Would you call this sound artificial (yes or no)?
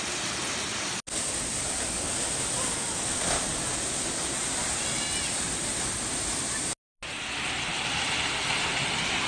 no